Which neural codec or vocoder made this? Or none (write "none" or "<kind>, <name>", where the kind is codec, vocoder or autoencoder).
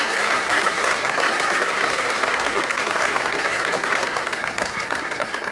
codec, SNAC